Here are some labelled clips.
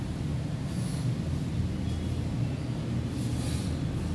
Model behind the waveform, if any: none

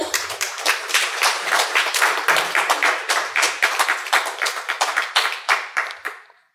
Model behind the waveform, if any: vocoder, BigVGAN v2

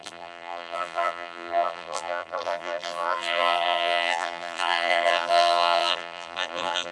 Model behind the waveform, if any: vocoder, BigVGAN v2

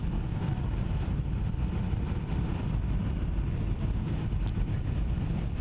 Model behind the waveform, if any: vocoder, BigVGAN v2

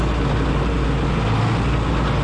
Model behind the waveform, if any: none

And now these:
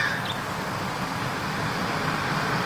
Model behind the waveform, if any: none